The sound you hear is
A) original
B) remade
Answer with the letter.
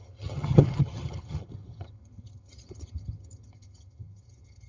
B